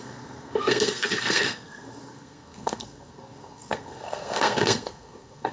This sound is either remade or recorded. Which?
remade